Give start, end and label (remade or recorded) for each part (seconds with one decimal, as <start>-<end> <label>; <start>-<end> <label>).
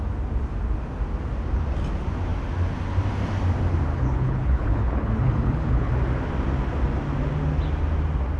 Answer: 0.0-3.9 recorded; 3.9-5.9 remade; 5.9-8.4 recorded